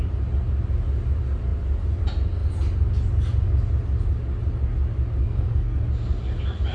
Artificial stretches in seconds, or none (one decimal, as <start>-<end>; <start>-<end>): 5.2-5.9